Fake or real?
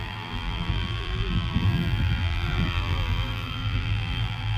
fake